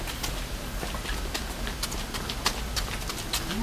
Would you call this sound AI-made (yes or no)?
no